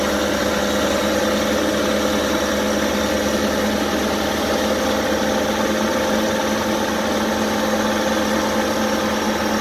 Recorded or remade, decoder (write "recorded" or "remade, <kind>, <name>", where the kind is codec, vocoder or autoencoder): recorded